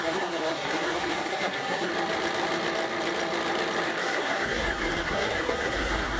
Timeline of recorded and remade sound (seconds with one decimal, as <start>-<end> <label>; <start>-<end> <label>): 0.0-1.9 remade; 1.9-4.0 recorded; 4.0-6.2 remade